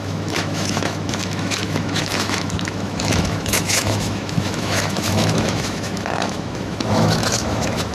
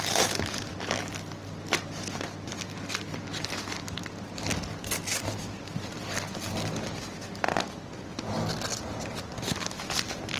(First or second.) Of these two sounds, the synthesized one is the first